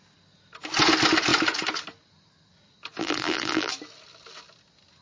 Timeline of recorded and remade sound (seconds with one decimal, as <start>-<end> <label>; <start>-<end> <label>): 0.0-3.0 recorded; 3.0-3.7 remade; 3.7-5.0 recorded

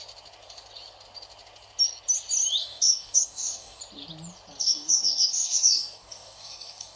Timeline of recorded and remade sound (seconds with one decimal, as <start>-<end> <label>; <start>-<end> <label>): 0.0-2.6 recorded; 2.6-3.8 remade; 3.8-4.6 recorded; 4.6-7.0 remade

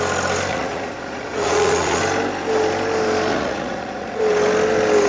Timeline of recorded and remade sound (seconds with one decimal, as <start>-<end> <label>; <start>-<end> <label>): 0.0-0.5 recorded; 0.5-2.0 remade; 2.0-3.3 recorded; 3.3-4.2 remade; 4.2-5.1 recorded

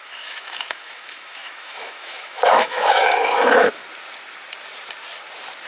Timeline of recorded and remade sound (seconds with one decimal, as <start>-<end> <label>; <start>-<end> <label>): 0.0-3.8 remade; 3.8-5.7 recorded

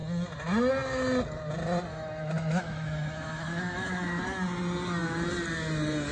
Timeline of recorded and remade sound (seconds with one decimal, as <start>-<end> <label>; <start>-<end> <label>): 0.0-1.9 recorded; 1.9-4.2 remade; 4.2-6.1 recorded

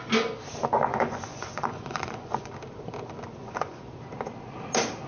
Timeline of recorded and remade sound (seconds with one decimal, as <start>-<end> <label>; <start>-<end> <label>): 0.0-0.9 recorded; 0.9-2.5 remade; 2.5-3.4 recorded; 3.4-3.9 remade; 3.9-5.1 recorded